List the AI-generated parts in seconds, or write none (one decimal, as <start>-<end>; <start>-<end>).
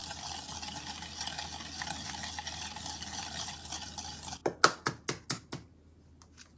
none